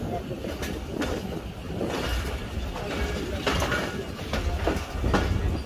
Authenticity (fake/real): real